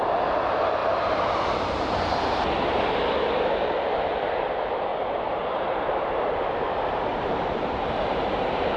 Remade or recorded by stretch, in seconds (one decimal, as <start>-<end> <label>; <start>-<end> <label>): 0.0-0.8 recorded; 0.8-1.3 remade; 1.3-4.9 recorded; 4.9-6.2 remade; 6.2-7.1 recorded; 7.1-8.8 remade